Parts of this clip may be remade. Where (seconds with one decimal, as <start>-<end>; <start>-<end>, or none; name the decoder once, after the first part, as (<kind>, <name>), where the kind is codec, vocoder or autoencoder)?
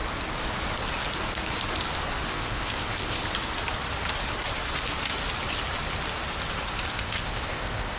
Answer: 2.3-3.2 (codec, ZipCodec); 6.9-8.0